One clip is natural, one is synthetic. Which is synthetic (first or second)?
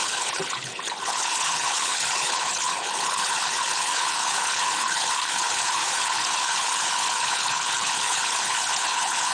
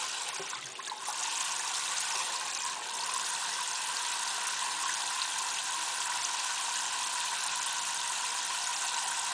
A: first